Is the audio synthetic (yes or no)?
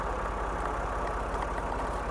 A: no